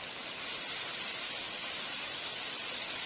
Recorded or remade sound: recorded